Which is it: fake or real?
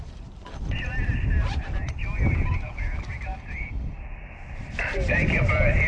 fake